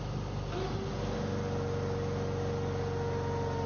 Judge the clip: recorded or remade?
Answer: recorded